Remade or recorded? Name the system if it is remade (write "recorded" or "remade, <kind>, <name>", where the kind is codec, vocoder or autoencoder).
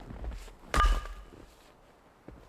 recorded